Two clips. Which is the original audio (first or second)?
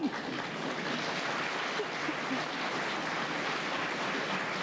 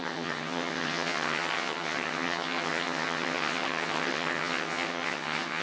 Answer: first